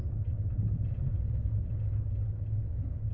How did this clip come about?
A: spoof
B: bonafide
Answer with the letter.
B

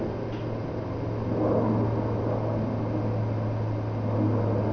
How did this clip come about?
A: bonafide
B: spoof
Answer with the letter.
A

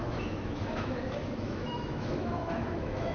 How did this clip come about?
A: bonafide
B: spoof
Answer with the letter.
B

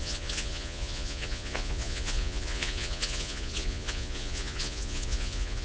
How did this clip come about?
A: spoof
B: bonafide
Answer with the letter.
A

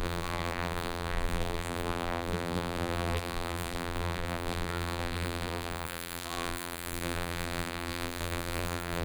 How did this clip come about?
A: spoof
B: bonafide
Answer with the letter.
A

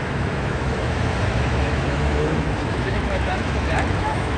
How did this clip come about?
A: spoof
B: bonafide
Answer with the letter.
A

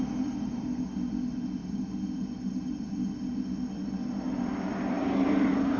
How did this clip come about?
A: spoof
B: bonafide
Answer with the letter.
B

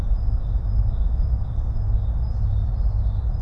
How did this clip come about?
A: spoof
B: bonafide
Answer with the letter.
B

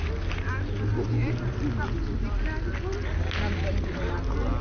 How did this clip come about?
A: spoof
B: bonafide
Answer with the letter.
B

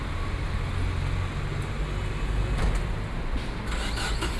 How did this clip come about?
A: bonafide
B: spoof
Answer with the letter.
A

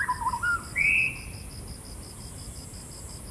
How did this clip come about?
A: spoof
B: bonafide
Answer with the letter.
B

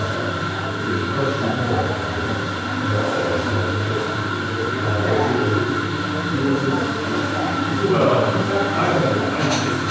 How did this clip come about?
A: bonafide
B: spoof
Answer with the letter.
B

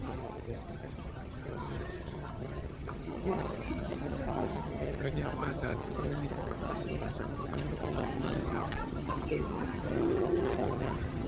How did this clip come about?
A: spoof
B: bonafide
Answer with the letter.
A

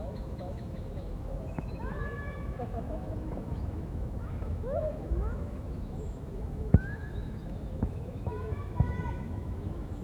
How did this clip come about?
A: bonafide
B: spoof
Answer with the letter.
B